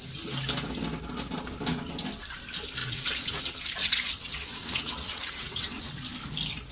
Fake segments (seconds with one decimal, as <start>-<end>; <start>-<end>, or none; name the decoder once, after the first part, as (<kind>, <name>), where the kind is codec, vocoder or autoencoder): 2.8-3.4 (vocoder, WaveNeXt); 3.8-5.9